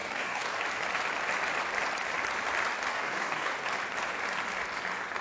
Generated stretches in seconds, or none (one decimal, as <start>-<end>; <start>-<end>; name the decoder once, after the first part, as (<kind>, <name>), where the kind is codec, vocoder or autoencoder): 0.0-0.6 (codec, DAC); 2.9-3.5